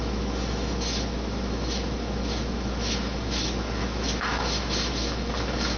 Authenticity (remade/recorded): remade